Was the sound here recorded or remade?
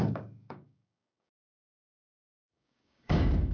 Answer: remade